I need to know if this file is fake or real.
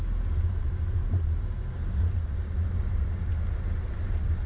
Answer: real